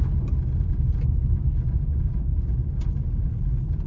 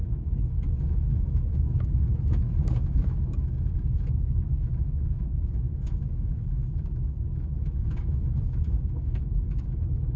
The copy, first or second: second